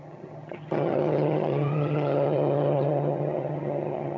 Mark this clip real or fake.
fake